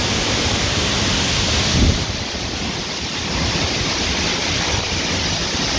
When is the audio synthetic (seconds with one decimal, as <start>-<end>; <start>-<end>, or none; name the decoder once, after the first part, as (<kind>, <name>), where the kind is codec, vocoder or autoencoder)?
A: 0.0-3.5 (vocoder, BigVGAN v2)